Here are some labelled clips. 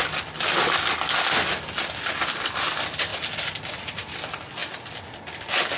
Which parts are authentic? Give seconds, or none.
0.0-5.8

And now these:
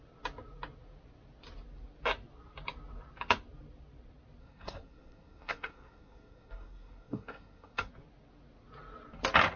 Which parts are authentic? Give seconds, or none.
0.0-4.4; 7.9-9.6

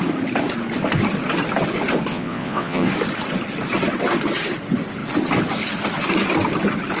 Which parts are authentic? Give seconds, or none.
0.0-2.1; 2.9-7.0

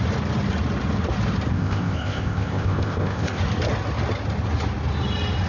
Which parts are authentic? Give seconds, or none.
0.0-1.5; 3.4-5.5